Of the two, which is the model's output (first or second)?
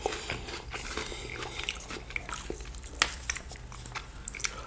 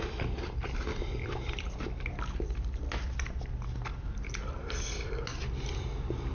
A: second